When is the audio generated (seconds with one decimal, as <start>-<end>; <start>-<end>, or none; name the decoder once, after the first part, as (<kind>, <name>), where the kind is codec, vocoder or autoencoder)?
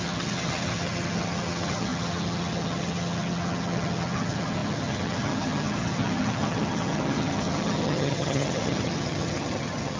0.0-10.0 (vocoder, HiFi-GAN)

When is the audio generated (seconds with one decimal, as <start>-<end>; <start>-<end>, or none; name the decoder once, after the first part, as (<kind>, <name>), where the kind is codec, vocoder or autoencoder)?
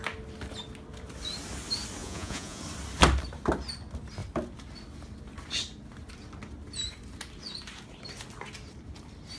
2.0-2.6 (vocoder, Vocos)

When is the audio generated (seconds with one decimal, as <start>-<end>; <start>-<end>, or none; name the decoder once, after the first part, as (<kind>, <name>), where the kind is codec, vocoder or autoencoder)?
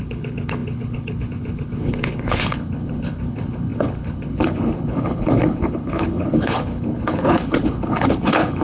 0.0-8.6 (codec, HILCodec)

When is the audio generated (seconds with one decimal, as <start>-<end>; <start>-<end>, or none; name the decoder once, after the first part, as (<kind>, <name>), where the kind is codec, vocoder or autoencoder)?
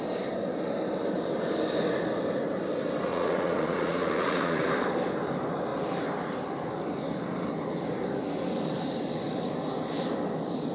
3.1-4.7 (vocoder, Vocos)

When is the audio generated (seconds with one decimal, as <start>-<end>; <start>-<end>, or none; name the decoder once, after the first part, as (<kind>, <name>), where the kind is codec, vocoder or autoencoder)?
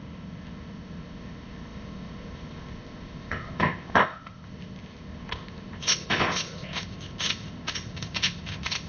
0.0-8.9 (codec, ZipCodec)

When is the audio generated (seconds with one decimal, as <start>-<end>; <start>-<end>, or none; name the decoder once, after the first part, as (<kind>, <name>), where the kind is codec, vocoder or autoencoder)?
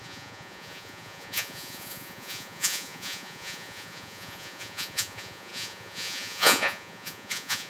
0.0-7.7 (vocoder, Vocos)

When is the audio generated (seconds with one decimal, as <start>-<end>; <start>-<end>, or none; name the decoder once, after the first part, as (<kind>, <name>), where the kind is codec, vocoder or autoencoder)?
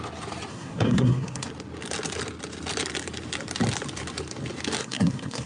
0.5-1.5 (codec, SNAC); 4.8-5.5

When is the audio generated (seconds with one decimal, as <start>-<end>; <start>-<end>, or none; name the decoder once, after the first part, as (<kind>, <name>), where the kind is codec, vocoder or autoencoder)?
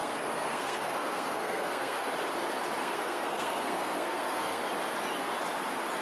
0.0-2.1 (codec, SNAC); 2.8-4.6